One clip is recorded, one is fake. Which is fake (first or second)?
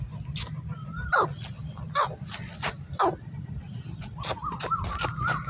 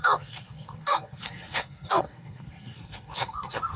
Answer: second